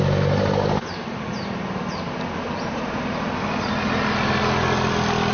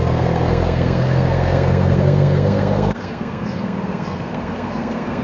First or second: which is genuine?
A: first